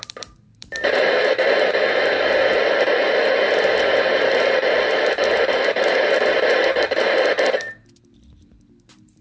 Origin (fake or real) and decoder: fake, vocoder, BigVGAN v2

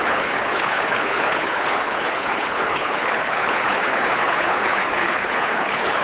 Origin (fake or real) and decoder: fake, codec, HILCodec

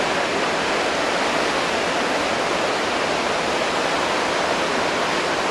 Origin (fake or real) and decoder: real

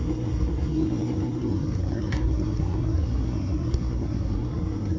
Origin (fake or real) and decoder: fake, codec, SNAC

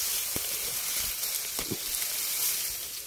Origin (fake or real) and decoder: real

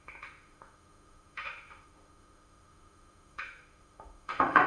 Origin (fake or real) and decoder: fake, autoencoder, DAC-VAE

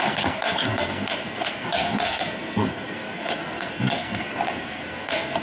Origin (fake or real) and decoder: fake, codec, SNAC